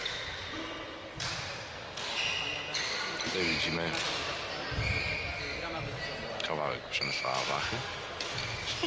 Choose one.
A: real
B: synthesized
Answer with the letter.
A